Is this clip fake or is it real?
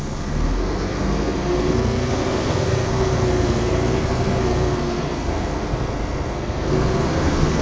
fake